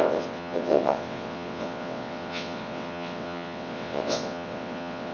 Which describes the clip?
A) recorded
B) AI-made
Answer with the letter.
B